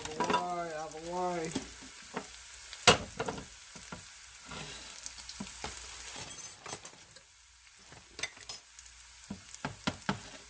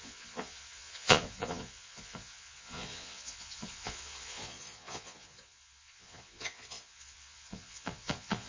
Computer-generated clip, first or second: second